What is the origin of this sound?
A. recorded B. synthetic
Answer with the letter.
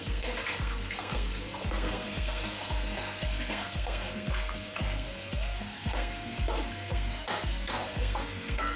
B